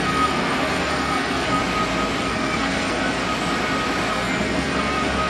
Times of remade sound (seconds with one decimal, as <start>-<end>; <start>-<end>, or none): 0.0-1.6; 2.2-3.2; 4.1-5.3

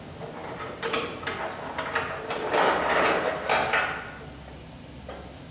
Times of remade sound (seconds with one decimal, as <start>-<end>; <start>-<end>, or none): none

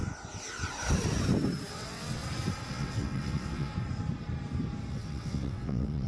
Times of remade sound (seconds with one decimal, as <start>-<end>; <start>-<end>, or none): 1.7-2.2; 2.7-3.7; 4.9-6.1

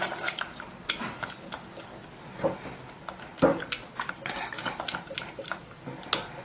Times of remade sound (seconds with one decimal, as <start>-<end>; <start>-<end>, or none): none

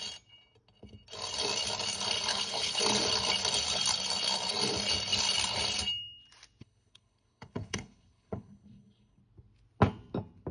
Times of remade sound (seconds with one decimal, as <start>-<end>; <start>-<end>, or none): 2.3-2.8; 6.6-9.2

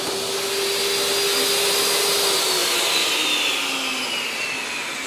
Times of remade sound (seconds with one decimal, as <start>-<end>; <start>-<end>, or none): 2.6-3.2